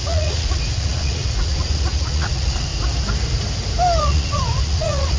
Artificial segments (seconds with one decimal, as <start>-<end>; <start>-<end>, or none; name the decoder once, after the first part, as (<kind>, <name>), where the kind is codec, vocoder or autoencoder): 0.0-2.7 (vocoder, Vocos); 4.0-5.2